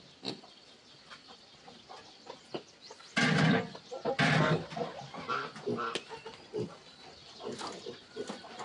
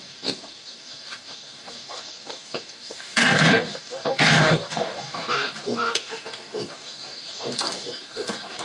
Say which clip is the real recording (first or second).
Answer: first